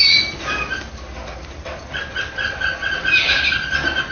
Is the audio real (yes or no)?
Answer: yes